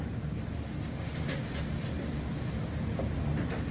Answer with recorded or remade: recorded